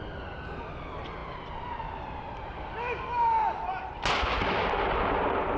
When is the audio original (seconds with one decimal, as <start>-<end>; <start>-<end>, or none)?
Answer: 0.0-5.6